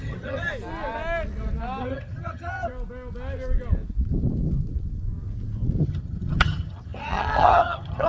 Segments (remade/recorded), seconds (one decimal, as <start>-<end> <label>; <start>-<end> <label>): 0.0-0.5 remade; 0.5-1.8 recorded; 1.8-2.7 remade; 2.7-5.8 recorded; 5.8-8.1 remade